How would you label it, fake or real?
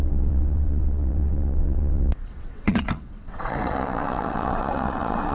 fake